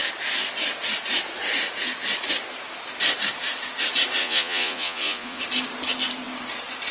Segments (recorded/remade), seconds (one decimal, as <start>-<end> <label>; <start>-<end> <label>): 0.0-4.2 recorded; 4.2-5.4 remade; 5.4-6.9 recorded